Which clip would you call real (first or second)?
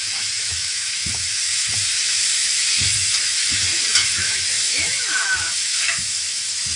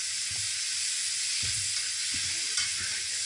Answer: second